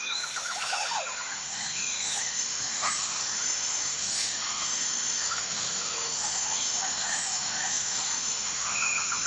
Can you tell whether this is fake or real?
fake